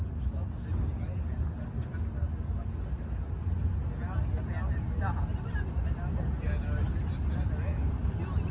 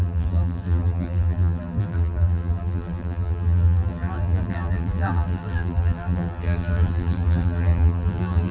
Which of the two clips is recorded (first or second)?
first